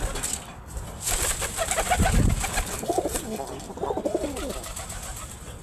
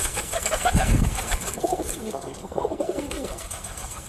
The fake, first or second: second